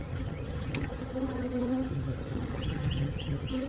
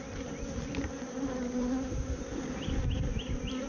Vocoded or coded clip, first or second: first